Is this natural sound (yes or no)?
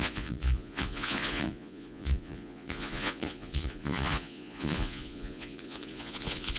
no